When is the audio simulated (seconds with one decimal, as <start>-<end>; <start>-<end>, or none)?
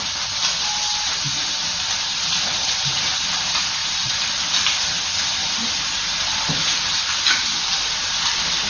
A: 2.1-2.7; 3.8-7.3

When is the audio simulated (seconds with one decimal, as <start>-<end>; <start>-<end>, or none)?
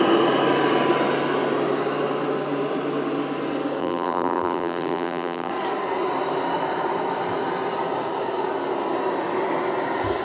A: 3.8-5.5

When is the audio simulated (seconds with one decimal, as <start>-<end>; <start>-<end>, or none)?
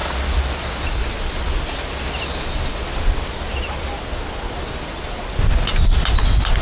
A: none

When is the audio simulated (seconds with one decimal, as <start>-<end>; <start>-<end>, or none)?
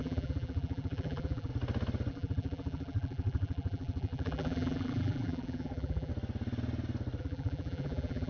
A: 0.0-1.5; 2.1-6.1; 7.2-8.3